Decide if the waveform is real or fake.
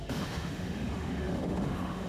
fake